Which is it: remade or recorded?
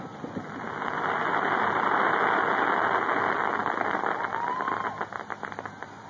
recorded